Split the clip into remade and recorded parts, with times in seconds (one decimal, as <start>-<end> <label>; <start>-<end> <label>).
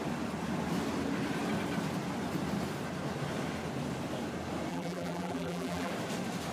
0.0-4.7 recorded; 4.7-5.9 remade; 5.9-6.5 recorded